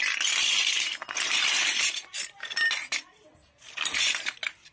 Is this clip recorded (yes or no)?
yes